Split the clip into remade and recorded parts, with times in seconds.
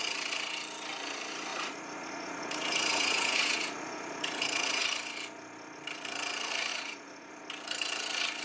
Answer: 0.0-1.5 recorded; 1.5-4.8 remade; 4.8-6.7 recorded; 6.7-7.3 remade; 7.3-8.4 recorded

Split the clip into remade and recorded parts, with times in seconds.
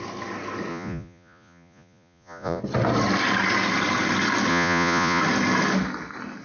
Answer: 0.0-0.7 recorded; 0.7-2.6 remade; 2.6-4.5 recorded; 4.5-5.2 remade; 5.2-6.4 recorded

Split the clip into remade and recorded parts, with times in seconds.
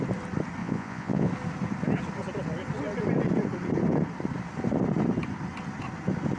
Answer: 0.0-0.6 recorded; 0.6-1.3 remade; 1.3-6.4 recorded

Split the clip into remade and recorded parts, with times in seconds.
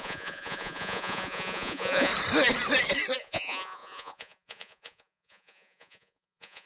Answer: 0.0-2.1 remade; 2.1-3.2 recorded; 3.2-6.7 remade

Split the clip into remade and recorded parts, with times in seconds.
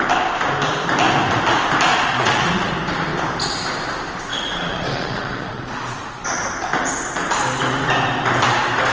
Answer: 0.0-1.9 recorded; 1.9-2.7 remade; 2.7-4.3 recorded; 4.3-6.5 remade; 6.5-8.9 recorded